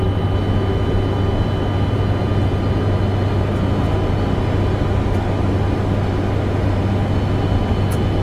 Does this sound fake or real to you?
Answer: real